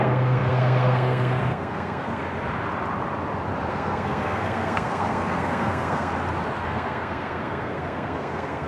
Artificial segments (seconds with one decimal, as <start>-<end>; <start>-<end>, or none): 0.0-2.2; 3.7-6.1; 6.6-8.7